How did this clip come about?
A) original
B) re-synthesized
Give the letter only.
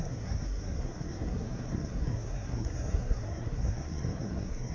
B